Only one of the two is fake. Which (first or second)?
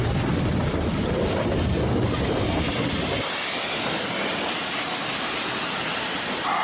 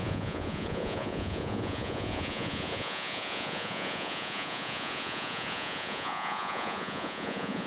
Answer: second